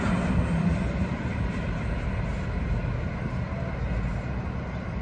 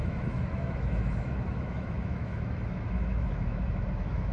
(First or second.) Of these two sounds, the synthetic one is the second